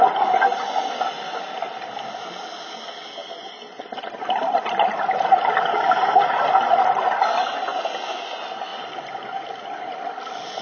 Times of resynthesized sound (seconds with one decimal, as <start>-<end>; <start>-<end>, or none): none